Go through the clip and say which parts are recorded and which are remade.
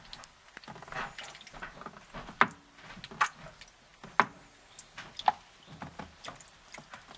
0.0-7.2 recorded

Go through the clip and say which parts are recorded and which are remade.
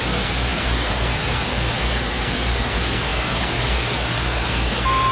0.0-5.1 remade